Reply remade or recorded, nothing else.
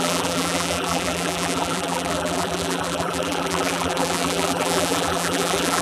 remade